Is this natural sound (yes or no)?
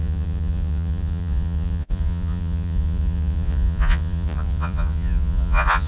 no